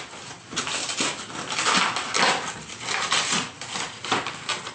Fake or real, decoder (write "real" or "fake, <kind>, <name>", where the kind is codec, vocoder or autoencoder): real